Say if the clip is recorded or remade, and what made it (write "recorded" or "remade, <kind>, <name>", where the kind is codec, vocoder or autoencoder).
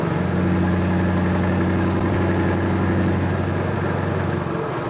recorded